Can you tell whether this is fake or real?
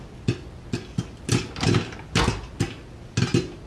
real